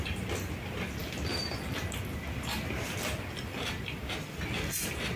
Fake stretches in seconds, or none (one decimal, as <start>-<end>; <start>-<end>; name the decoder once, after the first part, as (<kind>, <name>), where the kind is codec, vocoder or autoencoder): none